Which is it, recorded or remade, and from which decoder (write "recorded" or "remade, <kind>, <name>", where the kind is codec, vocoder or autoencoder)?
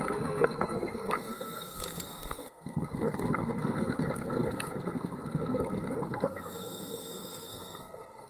remade, codec, SNAC